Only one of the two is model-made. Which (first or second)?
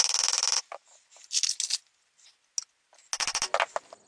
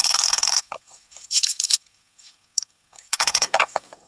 second